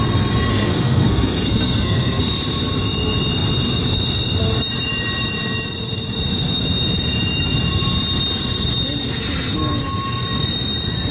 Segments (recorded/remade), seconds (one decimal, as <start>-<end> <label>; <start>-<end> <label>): 0.0-0.5 recorded; 0.5-2.2 remade; 2.2-11.1 recorded